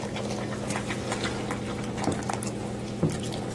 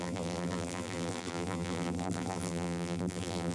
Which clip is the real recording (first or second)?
first